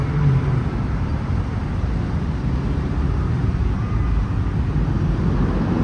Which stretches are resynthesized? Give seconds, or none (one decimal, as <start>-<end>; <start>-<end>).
none